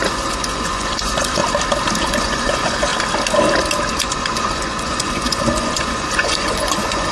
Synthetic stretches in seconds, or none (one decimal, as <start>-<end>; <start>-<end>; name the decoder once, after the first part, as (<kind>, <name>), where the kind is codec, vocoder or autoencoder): 0.0-1.4 (vocoder, Vocos); 2.0-2.9; 3.9-7.1